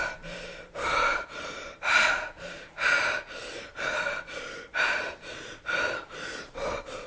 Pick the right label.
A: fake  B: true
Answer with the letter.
A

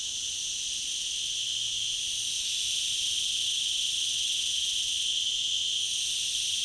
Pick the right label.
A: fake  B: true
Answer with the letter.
B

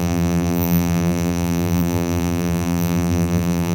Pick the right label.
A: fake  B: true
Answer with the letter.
A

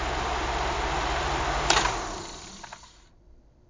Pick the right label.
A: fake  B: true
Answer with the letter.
A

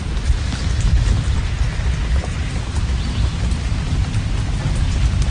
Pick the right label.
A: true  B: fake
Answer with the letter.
A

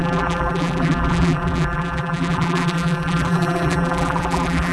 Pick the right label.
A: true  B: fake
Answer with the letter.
B